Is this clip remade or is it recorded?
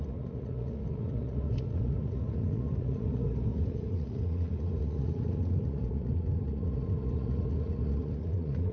remade